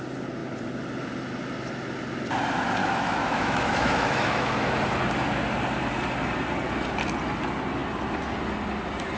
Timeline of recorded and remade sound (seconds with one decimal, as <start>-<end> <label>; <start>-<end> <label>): 0.0-2.8 recorded; 2.8-4.6 remade; 4.6-9.2 recorded